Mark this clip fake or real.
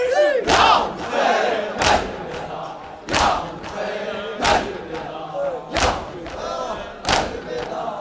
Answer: real